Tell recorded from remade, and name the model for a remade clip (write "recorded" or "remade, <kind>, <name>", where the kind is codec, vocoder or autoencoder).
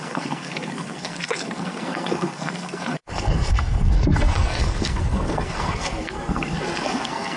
remade, codec, SNAC